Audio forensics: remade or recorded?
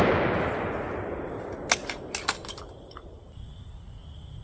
recorded